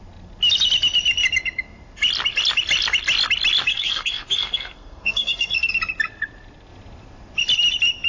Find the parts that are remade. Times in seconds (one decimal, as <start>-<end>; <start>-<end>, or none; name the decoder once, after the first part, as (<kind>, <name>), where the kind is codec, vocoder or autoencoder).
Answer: 3.7-5.7 (codec, SNAC)